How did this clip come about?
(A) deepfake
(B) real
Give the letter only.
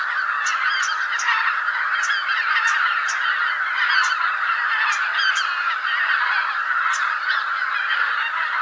B